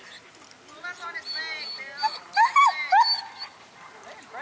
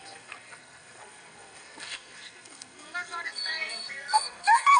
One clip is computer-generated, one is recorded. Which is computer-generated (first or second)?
second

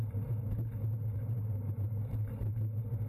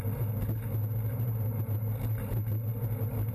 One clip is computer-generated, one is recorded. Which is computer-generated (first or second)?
first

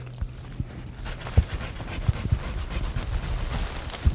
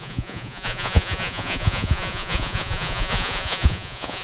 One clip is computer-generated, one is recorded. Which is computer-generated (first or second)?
second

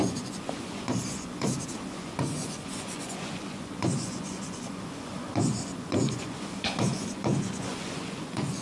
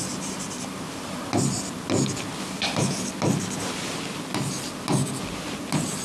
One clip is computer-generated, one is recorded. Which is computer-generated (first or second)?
first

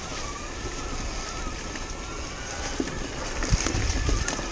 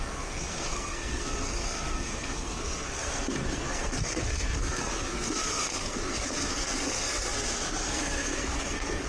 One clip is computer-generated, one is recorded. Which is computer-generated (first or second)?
second